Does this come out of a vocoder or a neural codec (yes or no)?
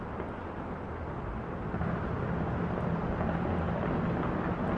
no